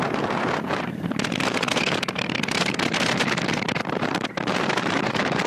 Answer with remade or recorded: remade